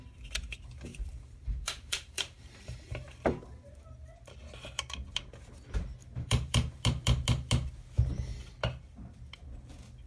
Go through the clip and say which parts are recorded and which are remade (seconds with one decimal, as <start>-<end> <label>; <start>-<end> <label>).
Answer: 0.0-0.9 recorded; 0.9-3.4 remade; 3.4-6.0 recorded; 6.0-6.8 remade; 6.8-10.1 recorded